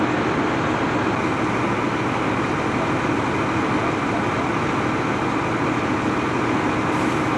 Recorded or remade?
recorded